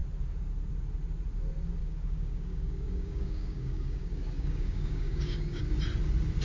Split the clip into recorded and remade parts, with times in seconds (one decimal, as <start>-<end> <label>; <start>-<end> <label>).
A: 0.0-1.8 recorded; 1.8-5.6 remade; 5.6-6.4 recorded